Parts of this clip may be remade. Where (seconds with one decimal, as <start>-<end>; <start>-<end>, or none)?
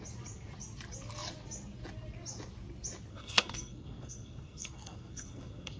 3.1-5.8